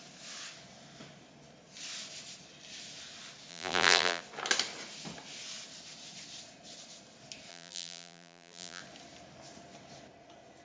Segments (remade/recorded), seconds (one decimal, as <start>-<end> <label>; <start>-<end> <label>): 0.0-3.5 recorded; 3.5-4.2 remade; 4.2-7.5 recorded; 7.5-8.8 remade; 8.8-10.6 recorded